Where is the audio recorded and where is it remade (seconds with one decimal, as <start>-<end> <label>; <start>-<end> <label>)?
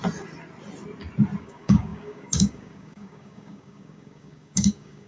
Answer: 0.0-1.4 recorded; 1.4-5.1 remade